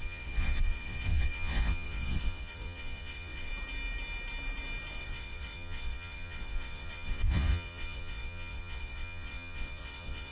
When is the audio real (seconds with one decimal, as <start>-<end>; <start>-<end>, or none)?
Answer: 3.5-4.9